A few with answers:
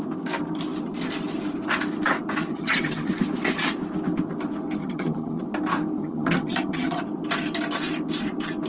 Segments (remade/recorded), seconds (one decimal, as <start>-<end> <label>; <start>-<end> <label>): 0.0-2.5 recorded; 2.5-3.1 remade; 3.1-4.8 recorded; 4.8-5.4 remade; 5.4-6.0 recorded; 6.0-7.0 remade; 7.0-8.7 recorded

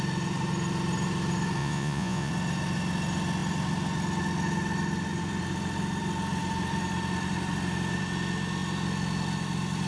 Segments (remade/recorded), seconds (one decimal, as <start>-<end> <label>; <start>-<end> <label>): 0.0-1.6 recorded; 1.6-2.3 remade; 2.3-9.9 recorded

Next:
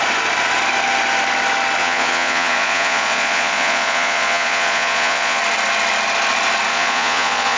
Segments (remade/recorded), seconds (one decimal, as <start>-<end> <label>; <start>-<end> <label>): 0.0-1.8 recorded; 1.8-5.4 remade; 5.4-6.7 recorded; 6.7-7.6 remade

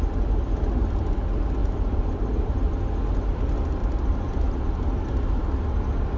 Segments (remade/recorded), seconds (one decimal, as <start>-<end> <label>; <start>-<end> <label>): 0.0-1.6 recorded; 1.6-2.7 remade; 2.7-3.8 recorded; 3.8-4.6 remade; 4.6-6.2 recorded